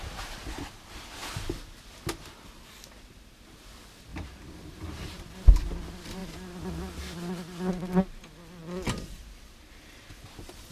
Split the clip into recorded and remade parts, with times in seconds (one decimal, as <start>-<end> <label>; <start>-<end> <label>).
0.0-4.1 recorded; 4.1-5.5 remade; 5.5-8.6 recorded; 8.6-10.1 remade; 10.1-10.7 recorded